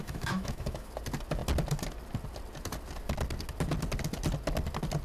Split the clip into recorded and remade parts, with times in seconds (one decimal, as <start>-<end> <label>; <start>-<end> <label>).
0.0-0.9 remade; 0.9-5.0 recorded

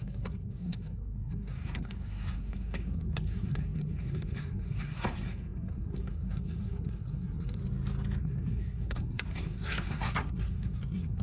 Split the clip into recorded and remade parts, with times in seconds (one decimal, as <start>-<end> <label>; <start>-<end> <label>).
0.0-7.6 remade; 7.6-8.2 recorded; 8.2-11.2 remade

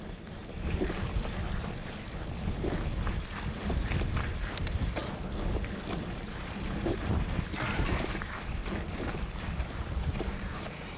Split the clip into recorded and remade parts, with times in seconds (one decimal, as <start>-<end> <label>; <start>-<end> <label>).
0.0-0.4 remade; 0.4-3.8 recorded; 3.8-5.0 remade; 5.0-6.0 recorded; 6.0-8.6 remade; 8.6-9.4 recorded; 9.4-11.0 remade